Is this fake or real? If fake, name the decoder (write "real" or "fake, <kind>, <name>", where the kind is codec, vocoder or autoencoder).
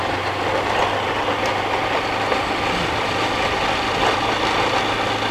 real